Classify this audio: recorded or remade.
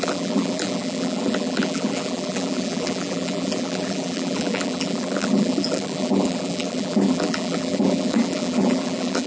remade